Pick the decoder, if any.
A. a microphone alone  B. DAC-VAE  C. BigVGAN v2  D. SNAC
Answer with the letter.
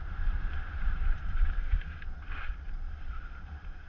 C